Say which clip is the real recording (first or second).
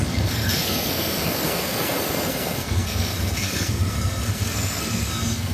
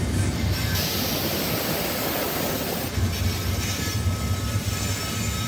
second